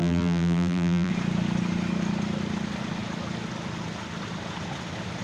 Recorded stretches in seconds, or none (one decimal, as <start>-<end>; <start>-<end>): 1.1-5.2